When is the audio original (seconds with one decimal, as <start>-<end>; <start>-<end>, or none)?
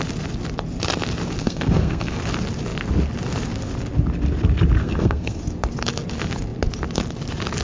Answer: 0.0-1.4; 2.2-4.8; 5.4-7.6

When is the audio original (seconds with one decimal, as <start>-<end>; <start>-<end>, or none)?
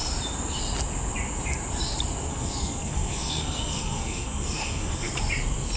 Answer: 0.0-2.3; 5.1-5.8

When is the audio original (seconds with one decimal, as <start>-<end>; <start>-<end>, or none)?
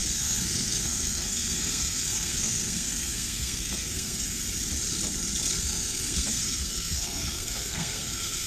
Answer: 4.4-5.6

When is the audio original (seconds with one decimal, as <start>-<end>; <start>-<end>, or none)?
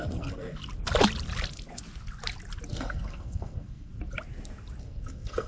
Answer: 0.6-2.7; 3.9-4.8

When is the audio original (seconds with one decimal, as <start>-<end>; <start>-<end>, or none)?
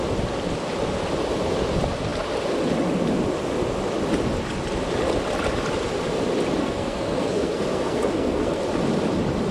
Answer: 0.0-6.6; 8.6-9.5